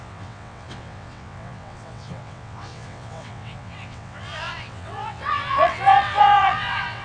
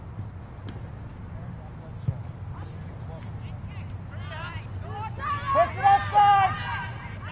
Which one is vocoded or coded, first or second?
first